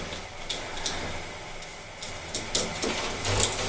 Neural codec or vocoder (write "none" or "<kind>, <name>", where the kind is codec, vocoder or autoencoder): none